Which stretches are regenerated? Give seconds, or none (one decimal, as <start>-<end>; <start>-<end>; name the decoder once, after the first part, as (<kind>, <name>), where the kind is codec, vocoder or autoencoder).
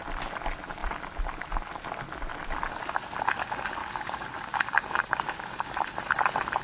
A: 3.8-5.7 (codec, DAC)